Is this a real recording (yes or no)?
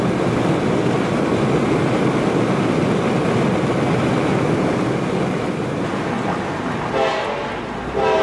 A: yes